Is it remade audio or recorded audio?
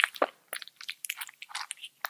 recorded